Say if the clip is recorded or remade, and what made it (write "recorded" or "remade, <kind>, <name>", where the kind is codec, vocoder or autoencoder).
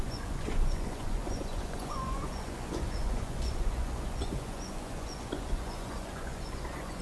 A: remade, vocoder, Vocos